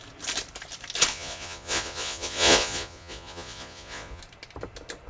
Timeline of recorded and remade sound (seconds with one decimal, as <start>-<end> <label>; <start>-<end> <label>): 0.0-1.1 recorded; 1.1-4.2 remade; 4.2-5.1 recorded